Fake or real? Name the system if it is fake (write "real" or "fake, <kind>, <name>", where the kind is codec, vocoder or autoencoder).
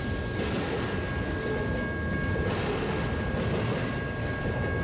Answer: real